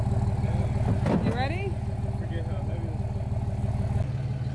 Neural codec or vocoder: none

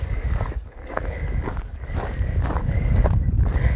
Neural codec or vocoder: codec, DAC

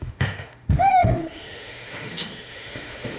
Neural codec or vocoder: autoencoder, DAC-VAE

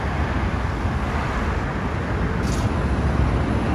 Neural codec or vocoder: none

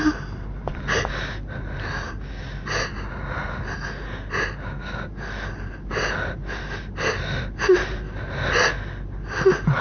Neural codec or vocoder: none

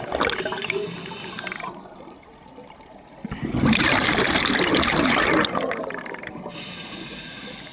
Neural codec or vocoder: none